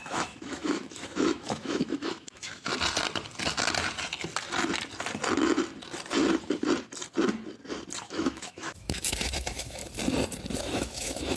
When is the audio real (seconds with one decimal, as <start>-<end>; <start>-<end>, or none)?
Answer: 2.7-8.0; 9.8-10.6